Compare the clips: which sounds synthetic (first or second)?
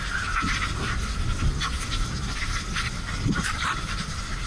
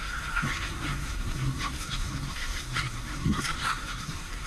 second